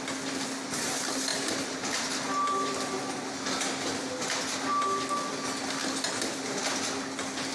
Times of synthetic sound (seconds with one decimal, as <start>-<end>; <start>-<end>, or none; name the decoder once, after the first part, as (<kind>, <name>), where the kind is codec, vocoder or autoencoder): none